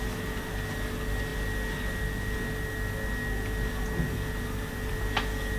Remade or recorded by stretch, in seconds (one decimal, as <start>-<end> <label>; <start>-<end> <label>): 0.0-5.6 recorded